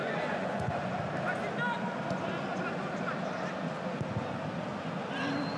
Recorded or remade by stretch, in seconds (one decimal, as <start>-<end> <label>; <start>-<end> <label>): 0.0-1.0 remade; 1.0-5.6 recorded